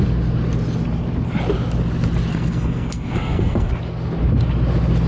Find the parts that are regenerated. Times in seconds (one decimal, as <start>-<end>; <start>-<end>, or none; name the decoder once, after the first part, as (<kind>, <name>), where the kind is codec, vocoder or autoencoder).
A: 2.3-3.7 (codec, SNAC)